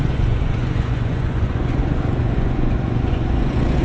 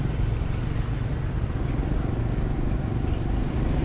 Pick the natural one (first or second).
second